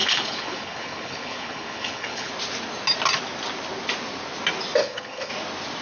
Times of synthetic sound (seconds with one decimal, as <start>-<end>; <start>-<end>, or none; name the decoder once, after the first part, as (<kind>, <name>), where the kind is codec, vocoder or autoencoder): 0.0-2.3 (codec, HILCodec); 4.8-5.3